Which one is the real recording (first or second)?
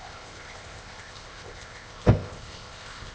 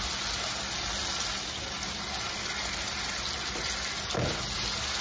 second